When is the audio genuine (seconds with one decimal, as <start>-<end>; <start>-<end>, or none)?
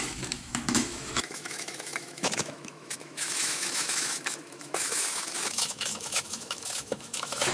none